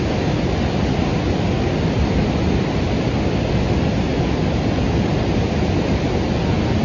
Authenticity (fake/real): real